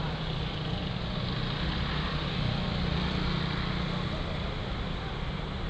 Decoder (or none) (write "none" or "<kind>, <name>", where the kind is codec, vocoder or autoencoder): none